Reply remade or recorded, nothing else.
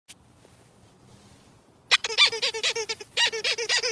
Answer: recorded